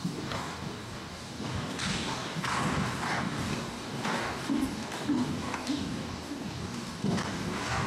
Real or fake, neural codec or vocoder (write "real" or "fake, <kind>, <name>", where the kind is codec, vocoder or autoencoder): fake, codec, DAC